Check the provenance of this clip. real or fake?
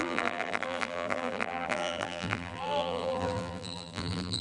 fake